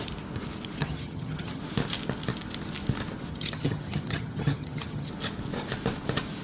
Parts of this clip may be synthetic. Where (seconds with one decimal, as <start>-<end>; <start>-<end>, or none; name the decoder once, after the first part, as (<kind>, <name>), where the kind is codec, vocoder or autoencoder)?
0.8-1.6 (vocoder, HiFi-GAN); 3.3-5.1